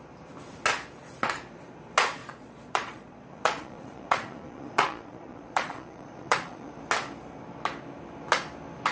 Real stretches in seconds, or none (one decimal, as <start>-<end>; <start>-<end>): 0.0-2.2; 6.7-8.9